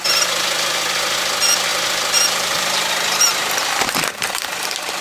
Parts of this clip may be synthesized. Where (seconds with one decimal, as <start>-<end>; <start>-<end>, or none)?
1.7-5.0